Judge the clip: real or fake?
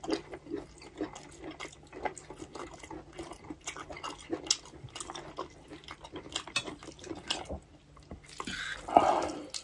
real